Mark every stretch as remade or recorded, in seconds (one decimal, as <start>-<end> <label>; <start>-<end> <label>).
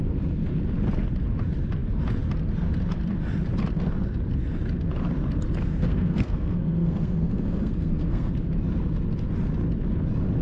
0.0-5.6 recorded; 5.6-8.3 remade; 8.3-10.4 recorded